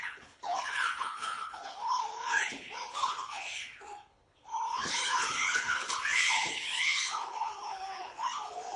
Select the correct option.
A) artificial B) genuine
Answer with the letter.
A